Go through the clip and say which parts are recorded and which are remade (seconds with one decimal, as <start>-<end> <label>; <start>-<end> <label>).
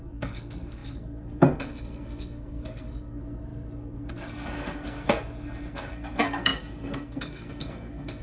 0.0-8.2 remade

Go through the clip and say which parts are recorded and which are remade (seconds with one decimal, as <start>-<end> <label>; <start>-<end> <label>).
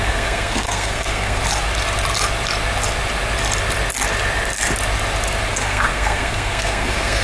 0.0-1.4 remade; 1.4-5.5 recorded; 5.5-7.2 remade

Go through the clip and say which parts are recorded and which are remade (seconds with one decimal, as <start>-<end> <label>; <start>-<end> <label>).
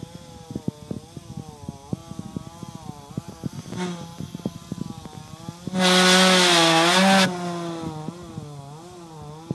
0.0-9.5 recorded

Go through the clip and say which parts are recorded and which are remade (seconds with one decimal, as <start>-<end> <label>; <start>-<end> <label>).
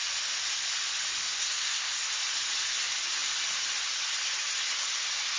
0.0-1.2 recorded; 1.2-1.9 remade; 1.9-5.4 recorded